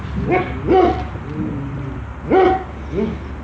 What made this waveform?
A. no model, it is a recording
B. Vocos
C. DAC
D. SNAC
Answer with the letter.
A